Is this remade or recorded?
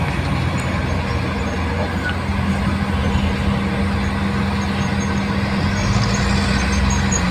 recorded